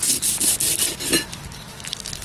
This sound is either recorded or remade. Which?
recorded